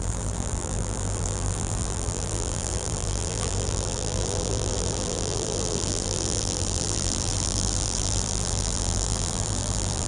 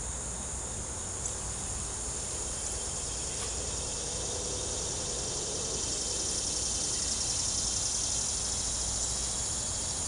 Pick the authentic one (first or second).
second